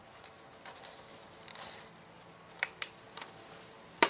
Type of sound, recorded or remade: remade